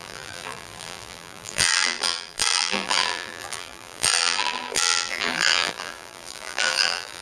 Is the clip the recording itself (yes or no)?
no